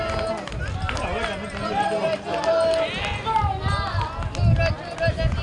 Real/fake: real